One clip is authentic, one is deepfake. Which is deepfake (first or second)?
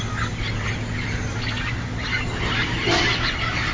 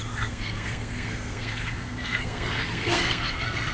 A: second